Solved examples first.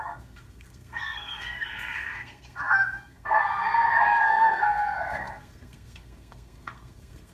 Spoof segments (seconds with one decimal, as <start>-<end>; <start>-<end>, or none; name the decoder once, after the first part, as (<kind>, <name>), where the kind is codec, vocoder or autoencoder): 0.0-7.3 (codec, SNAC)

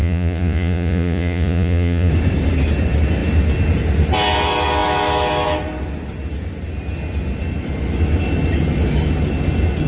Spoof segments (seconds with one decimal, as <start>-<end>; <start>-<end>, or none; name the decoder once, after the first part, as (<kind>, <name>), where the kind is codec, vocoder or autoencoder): 0.0-2.1 (vocoder, Vocos)

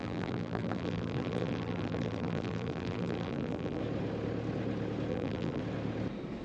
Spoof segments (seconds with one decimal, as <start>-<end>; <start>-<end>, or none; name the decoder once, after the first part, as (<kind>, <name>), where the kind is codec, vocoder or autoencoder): 0.0-3.8 (vocoder, BigVGAN v2); 5.1-5.6